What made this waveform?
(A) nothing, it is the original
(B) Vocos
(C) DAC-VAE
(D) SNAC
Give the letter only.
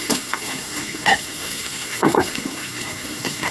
D